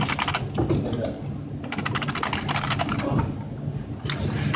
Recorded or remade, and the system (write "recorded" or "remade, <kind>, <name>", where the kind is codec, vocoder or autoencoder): recorded